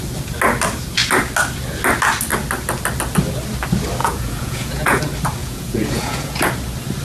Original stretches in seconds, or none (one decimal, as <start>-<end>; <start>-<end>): 0.0-4.0; 5.0-5.4; 6.5-7.0